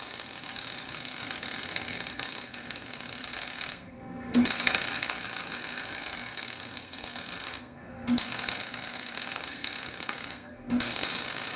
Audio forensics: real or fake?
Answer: fake